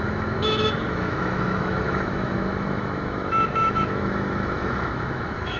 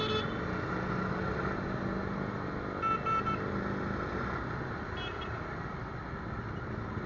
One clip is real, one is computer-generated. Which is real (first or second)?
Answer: second